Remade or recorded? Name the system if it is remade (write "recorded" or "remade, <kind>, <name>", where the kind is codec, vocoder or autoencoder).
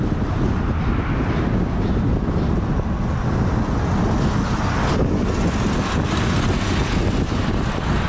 recorded